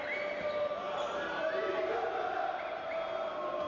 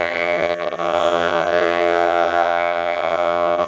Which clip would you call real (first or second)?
first